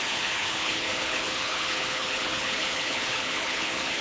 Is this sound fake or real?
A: fake